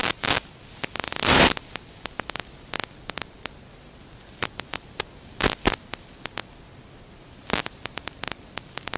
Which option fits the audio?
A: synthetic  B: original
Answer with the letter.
B